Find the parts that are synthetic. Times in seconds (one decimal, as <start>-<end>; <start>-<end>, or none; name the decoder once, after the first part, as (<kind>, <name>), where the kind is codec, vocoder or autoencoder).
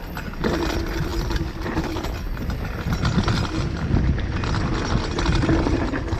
none